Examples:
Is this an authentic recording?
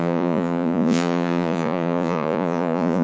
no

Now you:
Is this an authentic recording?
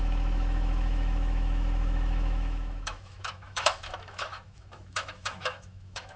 no